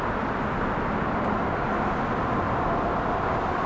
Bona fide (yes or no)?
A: yes